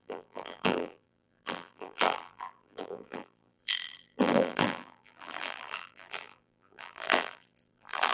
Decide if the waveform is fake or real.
fake